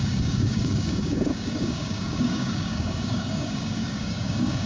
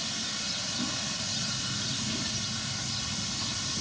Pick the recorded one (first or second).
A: second